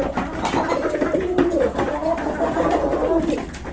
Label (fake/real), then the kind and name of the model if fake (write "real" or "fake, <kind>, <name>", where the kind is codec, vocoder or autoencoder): real